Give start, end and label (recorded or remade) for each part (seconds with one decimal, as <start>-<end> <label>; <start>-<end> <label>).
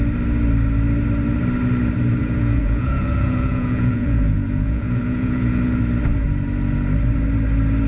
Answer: 0.0-2.2 recorded; 2.2-5.8 remade; 5.8-7.9 recorded